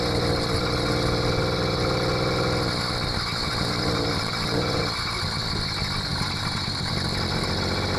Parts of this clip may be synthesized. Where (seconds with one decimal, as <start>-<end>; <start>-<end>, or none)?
3.4-4.8; 6.1-6.9